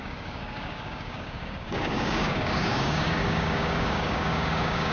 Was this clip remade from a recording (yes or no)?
yes